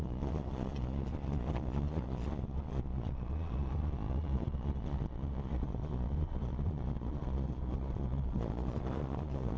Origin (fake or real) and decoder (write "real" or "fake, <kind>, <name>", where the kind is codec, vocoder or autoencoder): fake, vocoder, Vocos